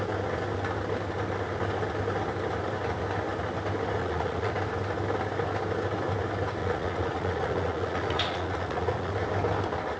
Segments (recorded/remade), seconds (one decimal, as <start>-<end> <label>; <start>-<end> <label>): 0.0-4.0 recorded; 4.0-4.5 remade; 4.5-6.6 recorded; 6.6-9.1 remade; 9.1-10.0 recorded